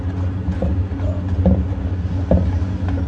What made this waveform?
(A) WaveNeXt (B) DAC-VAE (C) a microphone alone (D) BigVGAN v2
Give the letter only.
C